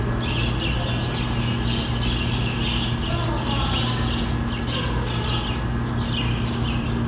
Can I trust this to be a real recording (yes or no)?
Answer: yes